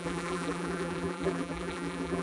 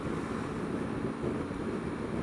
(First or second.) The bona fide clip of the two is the second